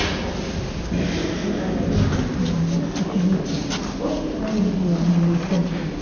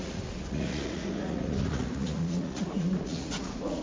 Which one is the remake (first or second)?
second